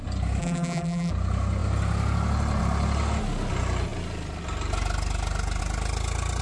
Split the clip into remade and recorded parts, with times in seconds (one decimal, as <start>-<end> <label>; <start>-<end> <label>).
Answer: 0.0-0.4 recorded; 0.4-1.1 remade; 1.1-6.4 recorded